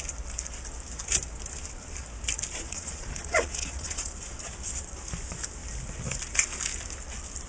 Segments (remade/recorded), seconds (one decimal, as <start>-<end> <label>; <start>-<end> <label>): 0.0-2.7 recorded; 2.7-4.1 remade; 4.1-7.5 recorded